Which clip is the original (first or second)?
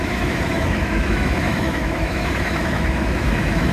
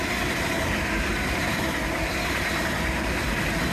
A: second